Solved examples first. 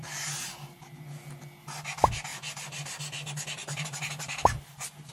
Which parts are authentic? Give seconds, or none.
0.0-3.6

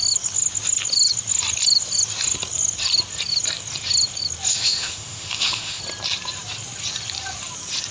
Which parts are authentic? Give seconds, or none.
0.0-4.5; 5.8-7.9

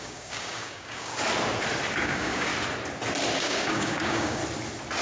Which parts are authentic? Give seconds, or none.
1.1-2.0; 2.5-3.4; 4.4-5.0

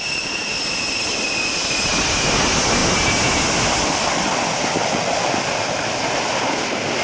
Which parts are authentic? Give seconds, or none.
0.0-7.0